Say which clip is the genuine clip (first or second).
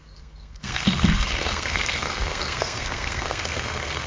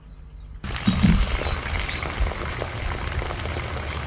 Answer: second